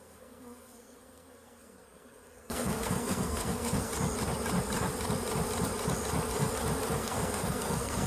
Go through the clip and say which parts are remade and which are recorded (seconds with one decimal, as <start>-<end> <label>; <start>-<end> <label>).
0.0-3.9 remade; 3.9-6.9 recorded; 6.9-8.1 remade